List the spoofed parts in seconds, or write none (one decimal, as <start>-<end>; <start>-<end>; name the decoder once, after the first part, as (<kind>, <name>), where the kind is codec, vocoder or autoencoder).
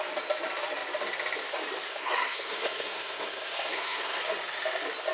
1.9-4.2 (codec, SNAC)